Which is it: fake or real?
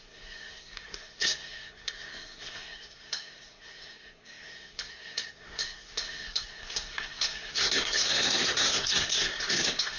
fake